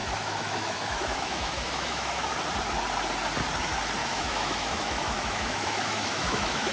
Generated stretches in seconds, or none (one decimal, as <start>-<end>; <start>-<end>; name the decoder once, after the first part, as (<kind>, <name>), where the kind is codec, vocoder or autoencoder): 0.0-2.3 (autoencoder, DAC-VAE); 4.0-6.7